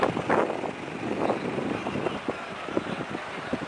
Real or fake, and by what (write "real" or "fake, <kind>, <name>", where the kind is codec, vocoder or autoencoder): real